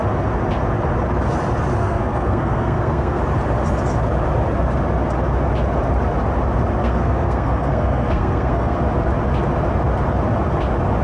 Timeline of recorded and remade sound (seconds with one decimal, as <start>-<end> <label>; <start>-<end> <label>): 0.0-1.8 recorded; 1.8-3.2 remade; 3.2-6.8 recorded; 6.8-8.8 remade; 8.8-11.0 recorded